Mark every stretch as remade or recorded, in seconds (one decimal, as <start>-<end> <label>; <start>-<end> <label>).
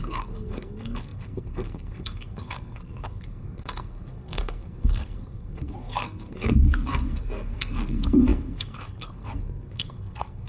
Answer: 0.0-10.5 remade